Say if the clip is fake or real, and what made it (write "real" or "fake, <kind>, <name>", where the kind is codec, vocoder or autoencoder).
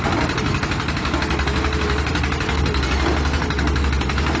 real